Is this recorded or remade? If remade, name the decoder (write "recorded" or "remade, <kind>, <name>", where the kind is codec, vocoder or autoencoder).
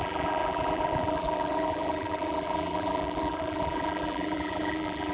remade, vocoder, BigVGAN v2